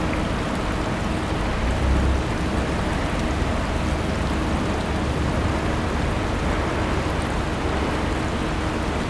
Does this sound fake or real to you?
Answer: real